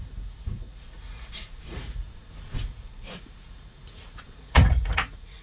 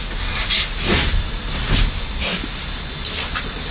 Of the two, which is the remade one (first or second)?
first